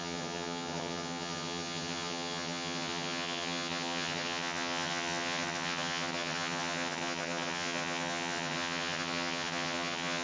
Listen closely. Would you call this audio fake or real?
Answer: fake